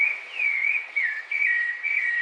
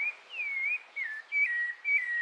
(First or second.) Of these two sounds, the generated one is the first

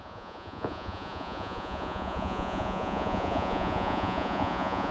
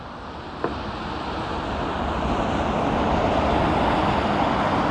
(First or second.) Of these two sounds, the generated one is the first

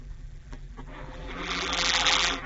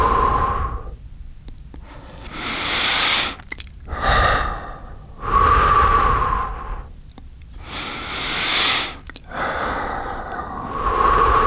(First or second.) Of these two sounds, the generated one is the first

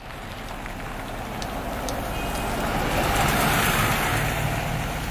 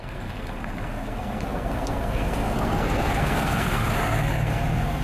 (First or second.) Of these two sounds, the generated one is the second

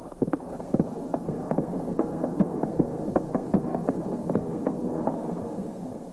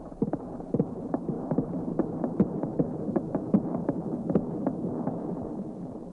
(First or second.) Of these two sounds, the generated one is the first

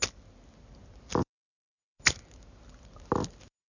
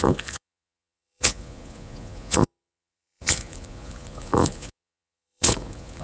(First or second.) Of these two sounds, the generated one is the second